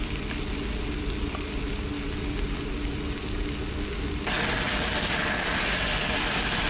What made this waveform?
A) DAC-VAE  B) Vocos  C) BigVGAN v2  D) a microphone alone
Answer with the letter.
D